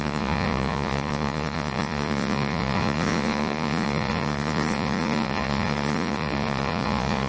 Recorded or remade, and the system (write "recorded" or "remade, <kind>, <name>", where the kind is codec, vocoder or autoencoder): remade, vocoder, Vocos